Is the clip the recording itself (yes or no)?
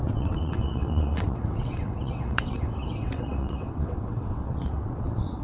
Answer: no